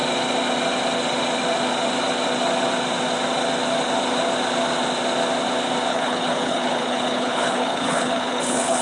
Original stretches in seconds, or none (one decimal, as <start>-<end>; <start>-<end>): 0.0-5.9